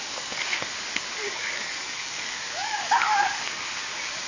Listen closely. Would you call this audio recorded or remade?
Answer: remade